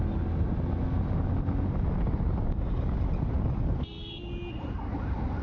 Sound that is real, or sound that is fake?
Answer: real